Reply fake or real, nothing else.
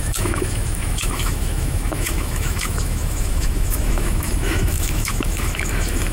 fake